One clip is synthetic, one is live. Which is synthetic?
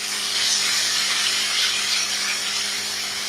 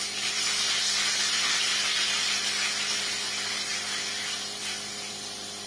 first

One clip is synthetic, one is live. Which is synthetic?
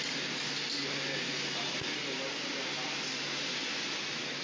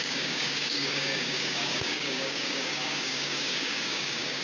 second